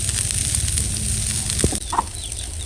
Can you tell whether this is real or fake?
real